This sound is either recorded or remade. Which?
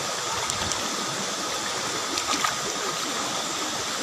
recorded